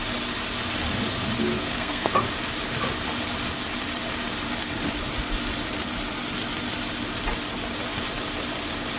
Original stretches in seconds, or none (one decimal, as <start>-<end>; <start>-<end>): 0.0-1.5; 2.1-9.0